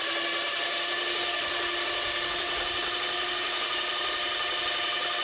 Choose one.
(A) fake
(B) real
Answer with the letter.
B